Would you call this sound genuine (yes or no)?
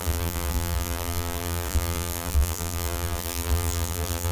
no